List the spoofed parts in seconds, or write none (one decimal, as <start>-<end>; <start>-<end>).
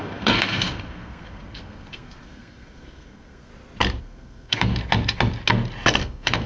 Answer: 0.0-3.5; 4.0-4.7; 6.0-6.5